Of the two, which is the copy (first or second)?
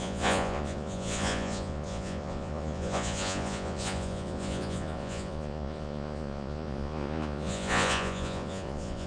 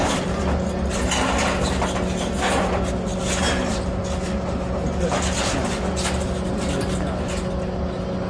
first